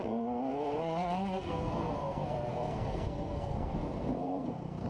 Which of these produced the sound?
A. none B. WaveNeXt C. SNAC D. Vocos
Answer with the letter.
C